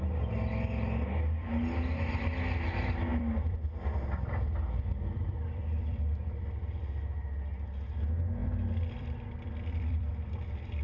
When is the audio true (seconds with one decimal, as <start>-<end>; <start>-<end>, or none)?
0.0-3.1; 6.9-8.4; 10.1-10.8